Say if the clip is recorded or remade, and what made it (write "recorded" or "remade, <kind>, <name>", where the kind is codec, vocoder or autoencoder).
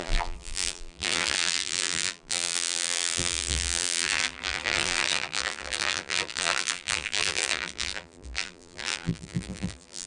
remade, vocoder, BigVGAN v2